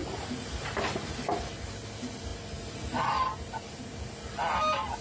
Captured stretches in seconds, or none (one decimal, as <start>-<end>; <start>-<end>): 0.0-5.0